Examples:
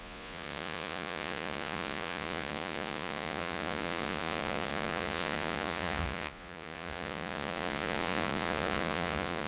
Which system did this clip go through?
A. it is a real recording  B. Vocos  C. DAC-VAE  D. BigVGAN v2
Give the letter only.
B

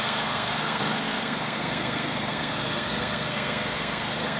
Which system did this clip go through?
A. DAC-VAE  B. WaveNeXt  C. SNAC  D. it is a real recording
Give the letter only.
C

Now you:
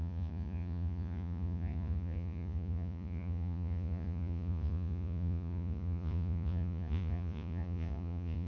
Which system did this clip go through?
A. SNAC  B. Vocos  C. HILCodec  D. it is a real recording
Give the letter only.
B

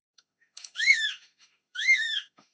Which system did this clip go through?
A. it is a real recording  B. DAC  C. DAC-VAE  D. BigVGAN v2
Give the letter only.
C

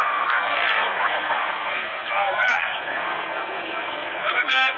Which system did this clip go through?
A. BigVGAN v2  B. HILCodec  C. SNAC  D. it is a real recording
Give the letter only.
C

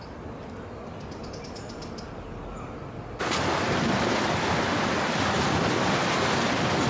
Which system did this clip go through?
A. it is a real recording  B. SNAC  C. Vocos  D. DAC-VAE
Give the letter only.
A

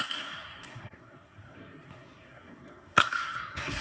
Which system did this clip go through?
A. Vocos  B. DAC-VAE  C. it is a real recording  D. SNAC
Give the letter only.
D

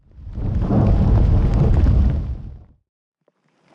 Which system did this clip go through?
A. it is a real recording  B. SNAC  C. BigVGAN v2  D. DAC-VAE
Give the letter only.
C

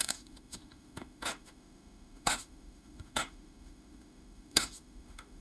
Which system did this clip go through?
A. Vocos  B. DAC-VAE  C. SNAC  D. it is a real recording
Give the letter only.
B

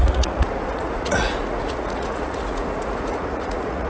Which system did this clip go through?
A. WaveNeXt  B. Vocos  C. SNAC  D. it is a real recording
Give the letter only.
B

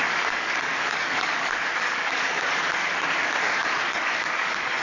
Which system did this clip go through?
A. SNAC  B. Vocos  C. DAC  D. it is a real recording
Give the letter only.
C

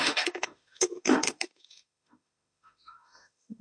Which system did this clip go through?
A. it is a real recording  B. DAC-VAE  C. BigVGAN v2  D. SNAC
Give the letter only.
B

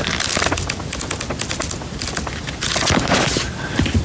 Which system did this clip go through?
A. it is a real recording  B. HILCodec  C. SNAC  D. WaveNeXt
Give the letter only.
A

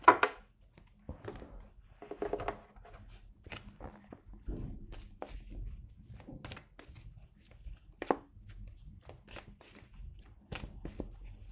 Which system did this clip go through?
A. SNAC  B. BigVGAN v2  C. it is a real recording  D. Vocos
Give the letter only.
C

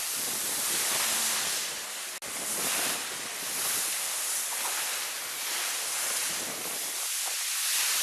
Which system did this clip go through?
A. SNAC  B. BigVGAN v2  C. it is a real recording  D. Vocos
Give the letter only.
C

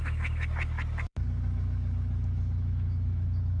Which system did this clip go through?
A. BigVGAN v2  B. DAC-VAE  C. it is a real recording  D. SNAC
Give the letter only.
B